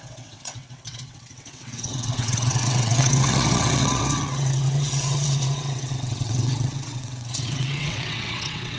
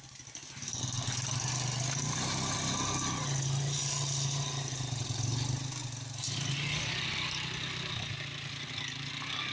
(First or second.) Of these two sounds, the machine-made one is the first